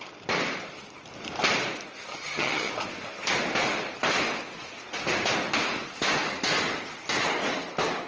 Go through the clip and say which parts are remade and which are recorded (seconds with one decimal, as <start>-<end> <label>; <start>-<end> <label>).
0.0-2.1 recorded; 2.1-2.7 remade; 2.7-8.1 recorded